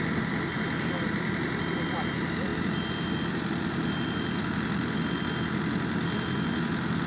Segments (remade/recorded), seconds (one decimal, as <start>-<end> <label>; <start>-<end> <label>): 0.0-7.1 recorded